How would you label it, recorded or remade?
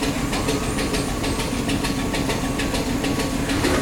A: recorded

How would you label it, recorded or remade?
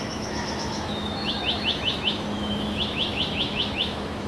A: remade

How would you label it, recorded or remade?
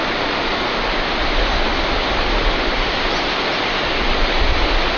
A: recorded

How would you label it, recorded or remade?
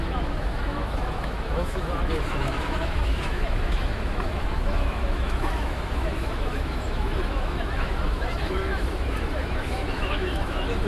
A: remade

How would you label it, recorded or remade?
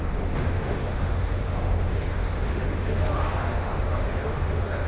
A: remade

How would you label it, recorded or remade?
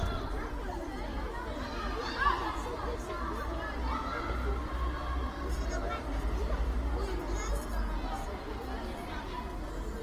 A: recorded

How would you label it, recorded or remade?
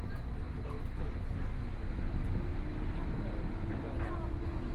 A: recorded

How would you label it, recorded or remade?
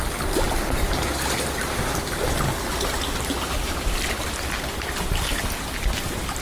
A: recorded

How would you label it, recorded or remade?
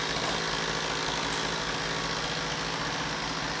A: recorded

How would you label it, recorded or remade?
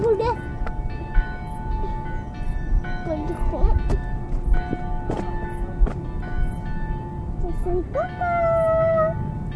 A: recorded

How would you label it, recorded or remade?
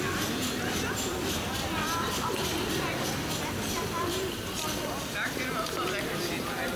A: recorded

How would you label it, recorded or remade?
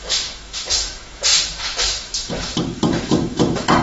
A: remade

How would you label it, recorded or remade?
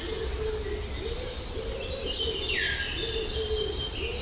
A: recorded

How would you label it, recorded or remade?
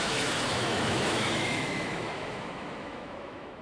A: remade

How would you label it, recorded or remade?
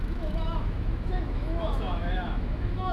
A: remade